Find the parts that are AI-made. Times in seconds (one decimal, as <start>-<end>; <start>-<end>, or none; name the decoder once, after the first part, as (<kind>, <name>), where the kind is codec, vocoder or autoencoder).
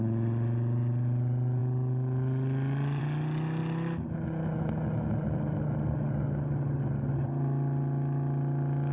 none